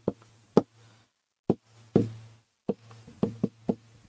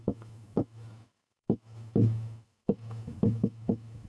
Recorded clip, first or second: first